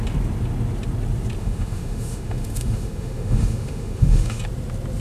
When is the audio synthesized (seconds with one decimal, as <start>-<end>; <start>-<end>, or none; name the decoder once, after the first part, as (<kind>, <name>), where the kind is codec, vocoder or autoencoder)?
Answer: 1.4-4.4 (autoencoder, DAC-VAE)